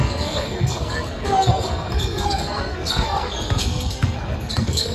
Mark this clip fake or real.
fake